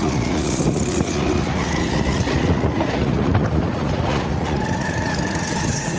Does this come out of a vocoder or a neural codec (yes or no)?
yes